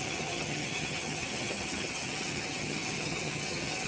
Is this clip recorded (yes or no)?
no